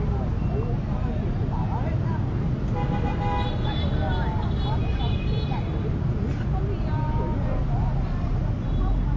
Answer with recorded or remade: recorded